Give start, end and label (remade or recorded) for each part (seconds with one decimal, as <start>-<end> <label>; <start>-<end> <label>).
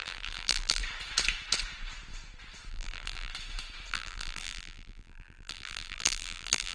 0.0-0.8 remade; 0.8-2.7 recorded; 2.7-3.3 remade; 3.3-3.9 recorded; 3.9-6.7 remade